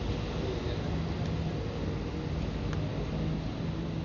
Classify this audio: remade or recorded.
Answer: recorded